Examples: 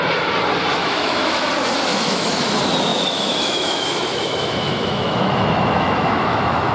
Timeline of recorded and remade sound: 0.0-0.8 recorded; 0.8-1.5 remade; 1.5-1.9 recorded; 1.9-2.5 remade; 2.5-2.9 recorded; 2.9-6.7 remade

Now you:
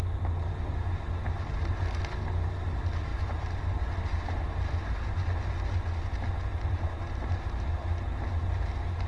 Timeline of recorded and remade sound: 0.0-9.1 recorded

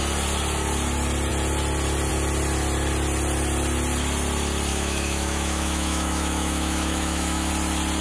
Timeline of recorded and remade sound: 0.0-4.7 recorded; 4.7-7.5 remade; 7.5-8.0 recorded

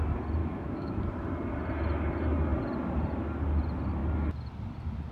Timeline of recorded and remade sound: 0.0-0.4 recorded; 0.4-1.0 remade; 1.0-5.1 recorded

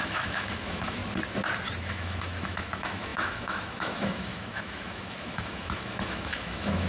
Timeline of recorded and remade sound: 0.0-1.0 remade; 1.0-1.8 recorded; 1.8-6.9 remade

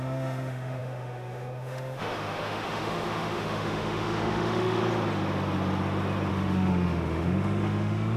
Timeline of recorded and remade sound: 0.0-4.8 remade; 4.8-6.3 recorded; 6.3-8.2 remade

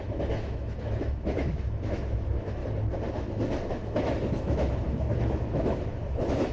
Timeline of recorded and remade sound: 0.0-2.6 remade; 2.6-3.1 recorded; 3.1-6.5 remade